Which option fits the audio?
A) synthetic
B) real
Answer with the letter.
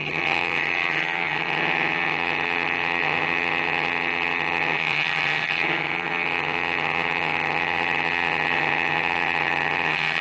A